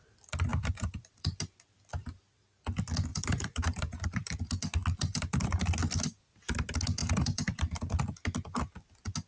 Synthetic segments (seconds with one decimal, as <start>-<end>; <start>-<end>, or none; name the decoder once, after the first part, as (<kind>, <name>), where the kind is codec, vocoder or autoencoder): 0.5-1.4 (vocoder, BigVGAN v2); 3.1-4.4; 5.1-5.6; 7.0-7.9